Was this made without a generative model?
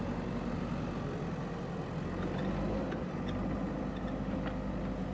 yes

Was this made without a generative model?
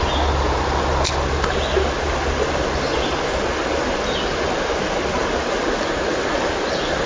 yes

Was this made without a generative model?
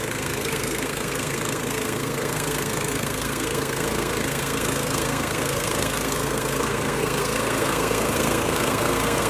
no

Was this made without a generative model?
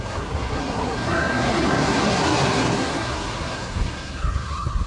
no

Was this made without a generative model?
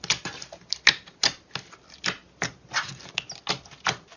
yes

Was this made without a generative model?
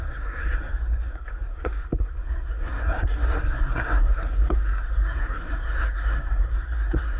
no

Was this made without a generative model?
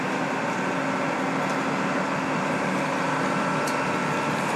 yes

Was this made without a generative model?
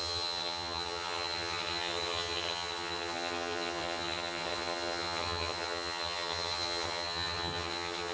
no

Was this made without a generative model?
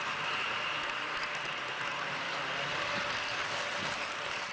yes